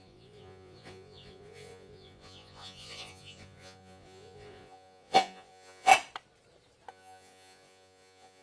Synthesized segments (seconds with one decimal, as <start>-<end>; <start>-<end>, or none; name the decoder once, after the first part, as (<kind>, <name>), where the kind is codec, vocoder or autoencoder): 0.0-5.9 (vocoder, Vocos); 6.9-8.4